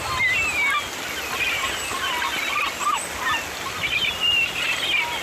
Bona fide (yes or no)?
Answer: yes